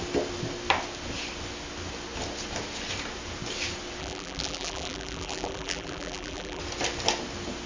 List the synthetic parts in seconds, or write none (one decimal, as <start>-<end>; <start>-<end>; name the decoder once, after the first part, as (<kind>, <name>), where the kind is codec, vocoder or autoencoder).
4.0-6.6 (vocoder, BigVGAN v2)